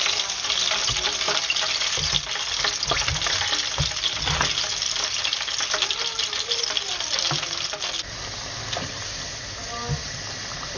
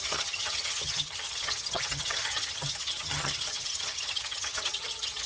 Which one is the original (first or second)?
first